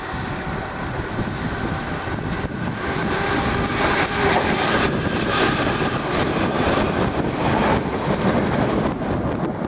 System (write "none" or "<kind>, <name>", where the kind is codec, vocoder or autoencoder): none